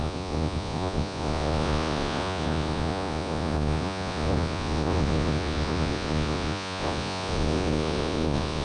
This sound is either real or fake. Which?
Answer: fake